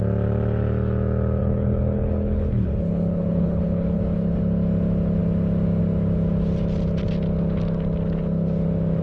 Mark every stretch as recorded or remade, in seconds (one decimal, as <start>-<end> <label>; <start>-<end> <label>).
0.0-1.4 recorded; 1.4-4.0 remade; 4.0-9.0 recorded